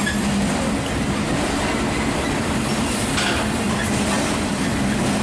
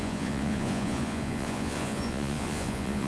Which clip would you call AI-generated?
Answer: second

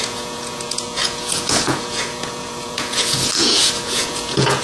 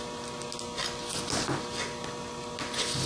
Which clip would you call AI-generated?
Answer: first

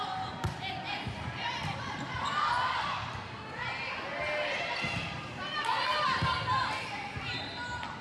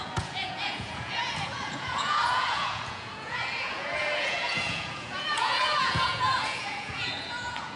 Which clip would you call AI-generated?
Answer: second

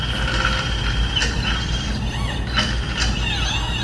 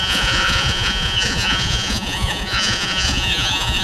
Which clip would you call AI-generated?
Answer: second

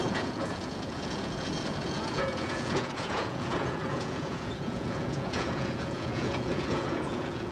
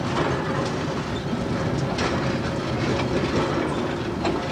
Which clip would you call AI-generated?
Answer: first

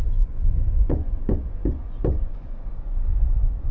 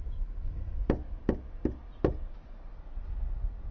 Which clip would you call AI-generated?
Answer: first